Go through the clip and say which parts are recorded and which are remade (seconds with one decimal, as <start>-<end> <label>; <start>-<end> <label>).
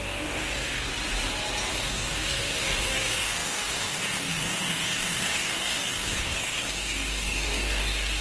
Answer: 0.0-0.9 remade; 0.9-1.7 recorded; 1.7-8.2 remade